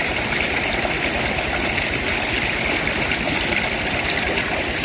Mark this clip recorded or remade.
recorded